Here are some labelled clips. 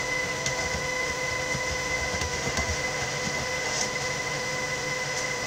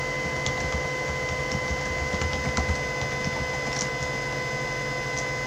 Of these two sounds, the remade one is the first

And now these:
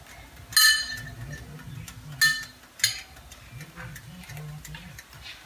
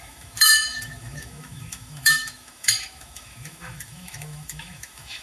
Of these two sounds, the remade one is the second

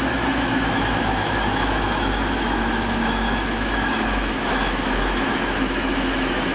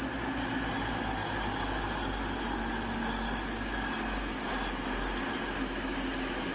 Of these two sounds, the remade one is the first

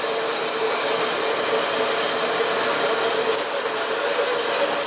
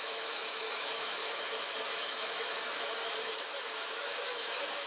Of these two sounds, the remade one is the second